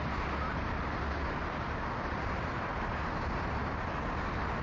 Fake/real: real